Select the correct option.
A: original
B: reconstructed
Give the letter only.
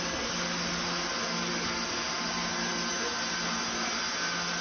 A